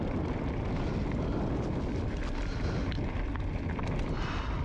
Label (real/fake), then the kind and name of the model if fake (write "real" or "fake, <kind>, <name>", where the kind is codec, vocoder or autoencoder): real